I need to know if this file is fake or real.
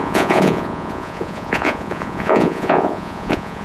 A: fake